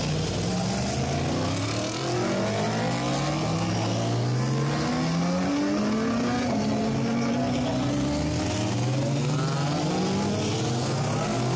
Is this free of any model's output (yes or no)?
yes